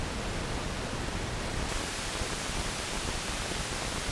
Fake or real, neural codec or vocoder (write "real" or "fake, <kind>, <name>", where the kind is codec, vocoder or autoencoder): real